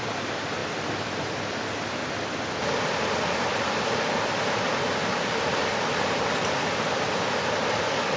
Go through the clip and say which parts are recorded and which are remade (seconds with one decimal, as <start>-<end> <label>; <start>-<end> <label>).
0.0-8.2 recorded